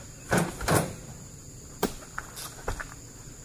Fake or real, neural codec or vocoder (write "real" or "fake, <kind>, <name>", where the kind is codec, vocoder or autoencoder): real